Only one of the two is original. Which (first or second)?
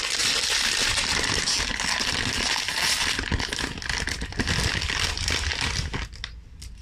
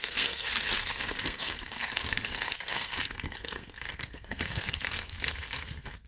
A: first